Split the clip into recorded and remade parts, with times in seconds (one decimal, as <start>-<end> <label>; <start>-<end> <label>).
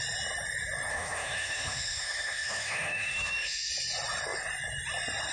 0.0-0.9 recorded; 0.9-3.7 remade; 3.7-5.3 recorded